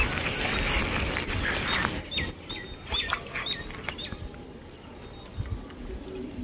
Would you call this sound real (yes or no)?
yes